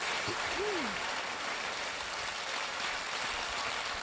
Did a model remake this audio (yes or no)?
no